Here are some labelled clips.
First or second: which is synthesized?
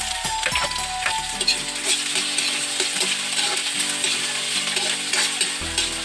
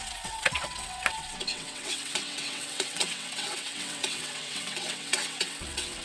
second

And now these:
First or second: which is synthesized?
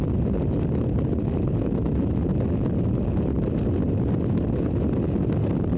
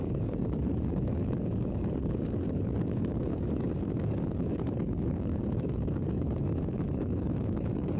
second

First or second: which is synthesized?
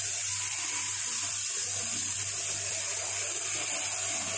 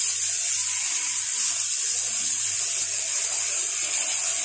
first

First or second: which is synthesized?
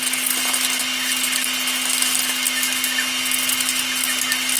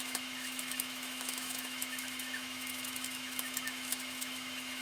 second